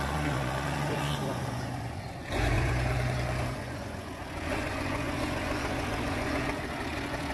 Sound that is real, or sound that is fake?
fake